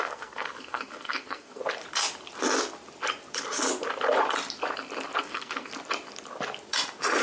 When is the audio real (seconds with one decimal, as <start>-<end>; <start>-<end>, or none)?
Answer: 1.6-5.2; 5.7-7.2